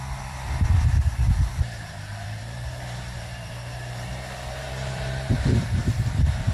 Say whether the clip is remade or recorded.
remade